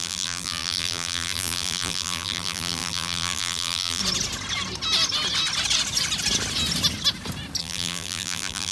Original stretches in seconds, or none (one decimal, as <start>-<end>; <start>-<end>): 4.0-7.6